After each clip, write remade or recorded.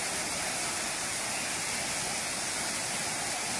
recorded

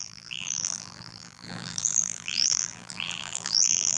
remade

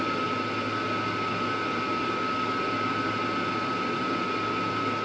recorded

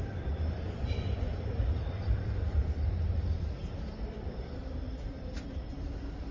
remade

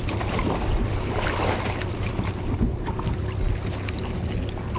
recorded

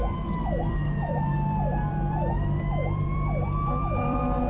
remade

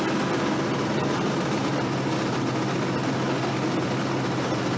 recorded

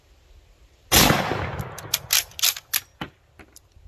recorded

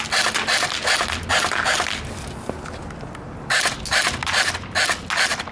recorded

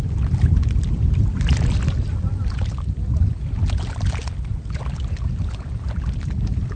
recorded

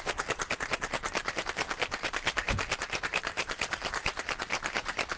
remade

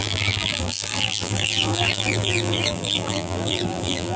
remade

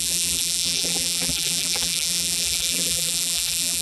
remade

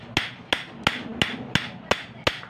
recorded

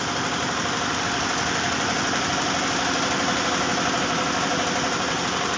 remade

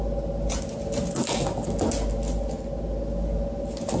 recorded